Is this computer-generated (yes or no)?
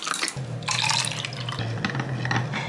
no